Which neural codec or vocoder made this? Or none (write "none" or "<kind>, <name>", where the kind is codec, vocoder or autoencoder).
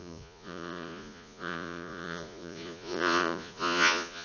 vocoder, Vocos